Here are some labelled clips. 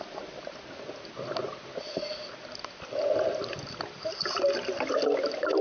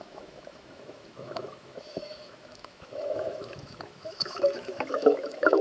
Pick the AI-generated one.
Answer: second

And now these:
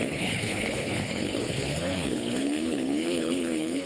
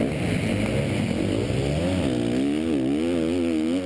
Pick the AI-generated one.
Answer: first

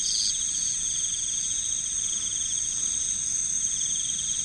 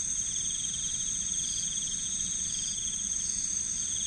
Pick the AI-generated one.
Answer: second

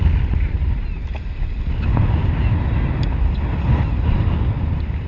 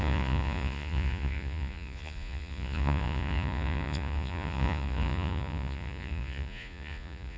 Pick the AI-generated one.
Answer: second